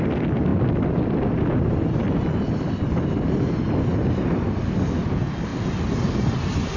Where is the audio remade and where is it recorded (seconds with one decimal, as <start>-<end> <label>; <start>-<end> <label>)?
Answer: 0.0-0.5 remade; 0.5-4.6 recorded; 4.6-5.5 remade; 5.5-6.1 recorded; 6.1-6.8 remade